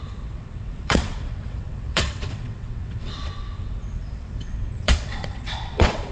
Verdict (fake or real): fake